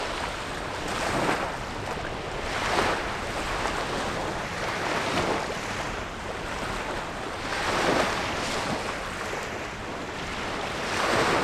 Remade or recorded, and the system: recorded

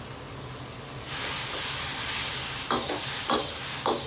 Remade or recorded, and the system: recorded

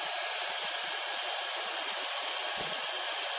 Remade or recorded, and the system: recorded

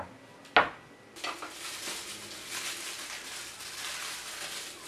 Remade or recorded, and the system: recorded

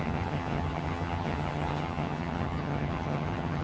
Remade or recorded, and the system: remade, vocoder, HiFi-GAN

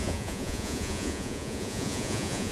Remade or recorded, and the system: remade, vocoder, Vocos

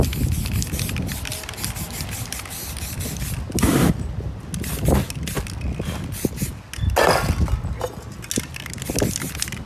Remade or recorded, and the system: recorded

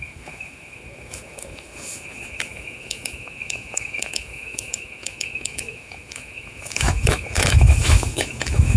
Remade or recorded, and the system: remade, autoencoder, DAC-VAE